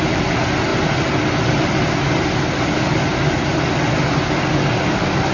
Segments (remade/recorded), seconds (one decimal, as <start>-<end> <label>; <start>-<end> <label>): 0.0-5.3 recorded